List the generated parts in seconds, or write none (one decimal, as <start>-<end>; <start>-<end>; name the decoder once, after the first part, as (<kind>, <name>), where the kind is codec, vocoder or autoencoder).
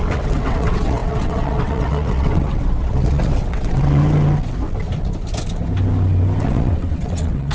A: 0.0-4.0 (vocoder, WaveNeXt); 6.4-7.5